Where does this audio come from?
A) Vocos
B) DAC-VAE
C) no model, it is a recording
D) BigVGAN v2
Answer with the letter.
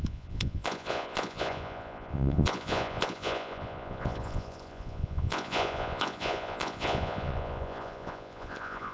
A